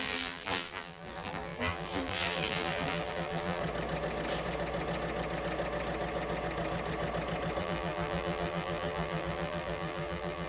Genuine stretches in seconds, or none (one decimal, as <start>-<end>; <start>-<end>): 3.6-7.6